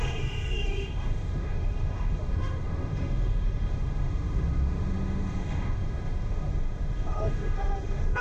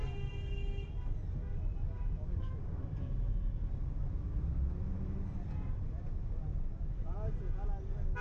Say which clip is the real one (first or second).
second